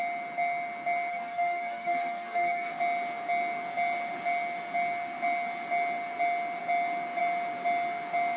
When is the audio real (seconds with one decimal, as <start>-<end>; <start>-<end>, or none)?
0.0-1.1; 2.7-8.4

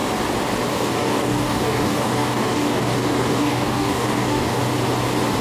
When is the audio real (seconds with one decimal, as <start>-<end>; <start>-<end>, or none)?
0.0-0.7; 4.6-5.4

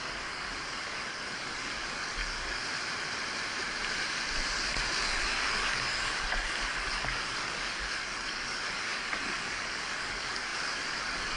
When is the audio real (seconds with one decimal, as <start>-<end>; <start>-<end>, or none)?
2.6-5.0

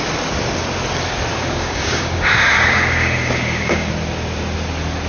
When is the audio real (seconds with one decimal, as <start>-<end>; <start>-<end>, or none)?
0.0-1.3; 3.9-5.1

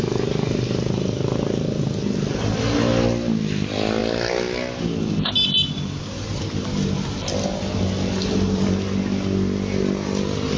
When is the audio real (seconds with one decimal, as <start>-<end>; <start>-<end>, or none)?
0.0-10.6

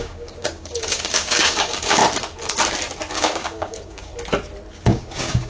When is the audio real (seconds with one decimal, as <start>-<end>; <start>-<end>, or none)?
2.0-3.1; 4.1-4.7